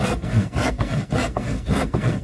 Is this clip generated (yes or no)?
yes